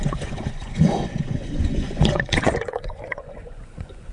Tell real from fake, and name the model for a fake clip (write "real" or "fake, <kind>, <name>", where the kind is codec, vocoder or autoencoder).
fake, vocoder, Vocos